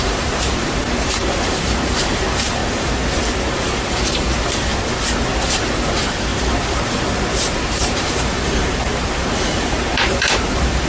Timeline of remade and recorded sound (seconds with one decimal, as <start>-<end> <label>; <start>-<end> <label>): 0.0-2.6 remade; 2.6-3.5 recorded; 3.5-4.7 remade; 4.7-5.3 recorded; 5.3-6.3 remade; 6.3-7.3 recorded; 7.3-10.9 remade